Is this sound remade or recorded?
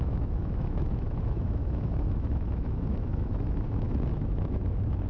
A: remade